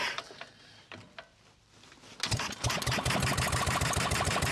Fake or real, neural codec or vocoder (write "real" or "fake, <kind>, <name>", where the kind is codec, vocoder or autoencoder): real